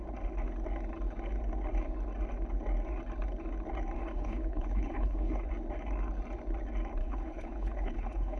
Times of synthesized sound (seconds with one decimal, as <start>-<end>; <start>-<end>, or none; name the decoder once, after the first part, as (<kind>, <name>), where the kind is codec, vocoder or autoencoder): 4.0-5.5 (codec, HILCodec); 7.0-8.4